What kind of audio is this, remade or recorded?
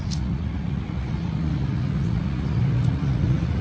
remade